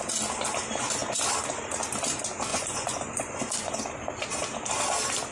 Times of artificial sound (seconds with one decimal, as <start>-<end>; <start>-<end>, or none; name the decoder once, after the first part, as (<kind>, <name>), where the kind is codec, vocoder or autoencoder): 2.5-3.7 (vocoder, Vocos)